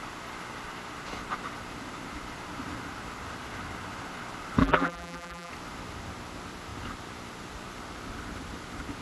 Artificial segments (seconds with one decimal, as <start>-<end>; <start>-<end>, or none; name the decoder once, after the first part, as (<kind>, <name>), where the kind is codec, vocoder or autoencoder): 4.6-5.5 (vocoder, BigVGAN v2)